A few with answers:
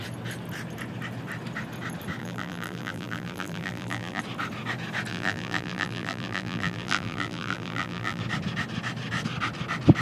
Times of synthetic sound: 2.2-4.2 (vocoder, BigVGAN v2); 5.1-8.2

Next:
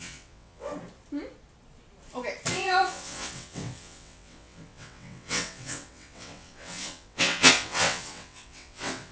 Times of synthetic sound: 0.0-0.7 (vocoder, WaveNeXt); 2.5-9.1

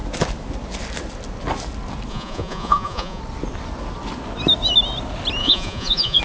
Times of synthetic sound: 2.1-3.2 (vocoder, Vocos); 5.4-6.2

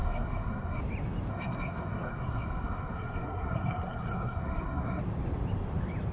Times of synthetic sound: 0.0-0.8 (codec, SNAC); 1.3-5.0

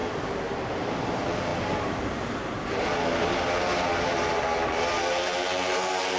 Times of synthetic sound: 0.0-6.2 (vocoder, BigVGAN v2)

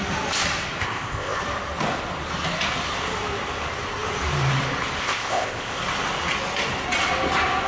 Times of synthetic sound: 0.8-1.4 (codec, ZipCodec); 5.0-5.8

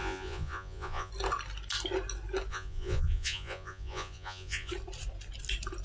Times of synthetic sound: 0.0-1.1 (vocoder, Vocos); 2.5-4.7

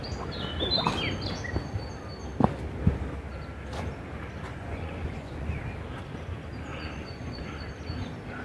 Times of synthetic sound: 4.5-5.6 (vocoder, Vocos); 6.7-7.6